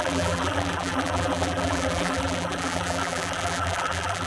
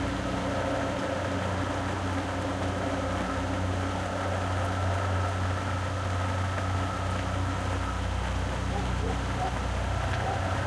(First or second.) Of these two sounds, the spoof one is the first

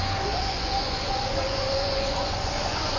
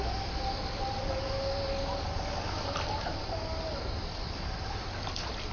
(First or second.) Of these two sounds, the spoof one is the first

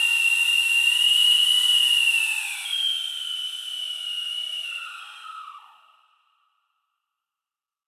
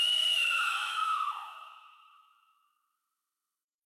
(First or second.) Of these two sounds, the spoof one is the second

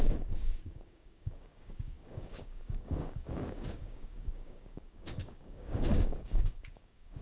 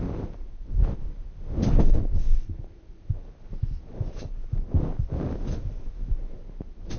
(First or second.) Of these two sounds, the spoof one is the first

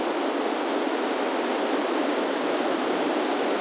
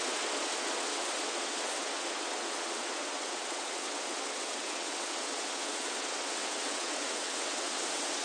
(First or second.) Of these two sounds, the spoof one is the second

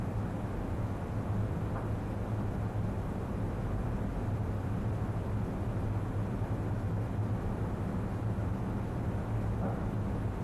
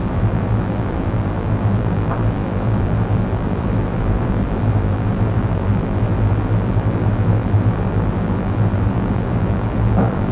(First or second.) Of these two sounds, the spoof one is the second